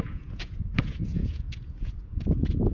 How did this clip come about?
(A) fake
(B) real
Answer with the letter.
A